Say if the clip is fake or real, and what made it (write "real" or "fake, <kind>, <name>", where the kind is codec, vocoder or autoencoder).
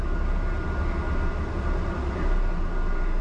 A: real